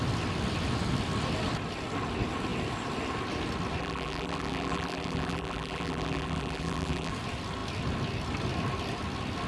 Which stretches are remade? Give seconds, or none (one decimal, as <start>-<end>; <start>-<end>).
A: 3.8-7.1